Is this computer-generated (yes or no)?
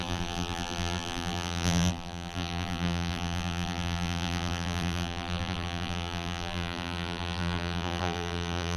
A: yes